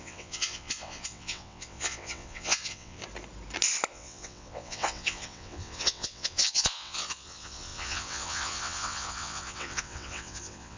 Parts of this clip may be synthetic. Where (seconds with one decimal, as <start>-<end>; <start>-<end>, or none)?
0.0-3.0; 3.9-10.8